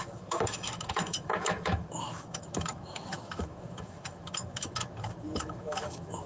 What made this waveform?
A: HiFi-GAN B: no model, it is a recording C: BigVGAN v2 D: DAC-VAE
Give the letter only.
D